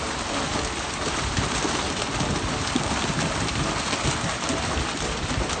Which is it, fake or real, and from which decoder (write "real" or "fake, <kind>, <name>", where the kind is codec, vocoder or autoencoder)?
real